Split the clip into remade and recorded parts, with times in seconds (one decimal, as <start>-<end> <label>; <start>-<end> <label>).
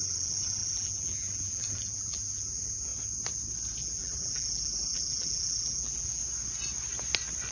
0.0-2.9 remade; 2.9-3.8 recorded; 3.8-6.2 remade; 6.2-7.5 recorded